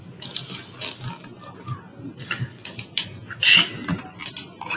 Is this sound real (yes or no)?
yes